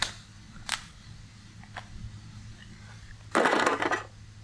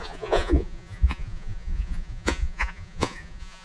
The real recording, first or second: first